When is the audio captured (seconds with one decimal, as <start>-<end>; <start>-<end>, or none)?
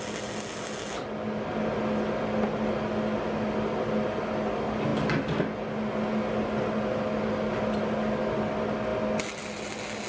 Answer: 0.0-10.1